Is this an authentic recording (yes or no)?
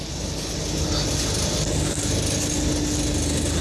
yes